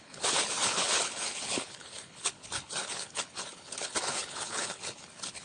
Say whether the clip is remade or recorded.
remade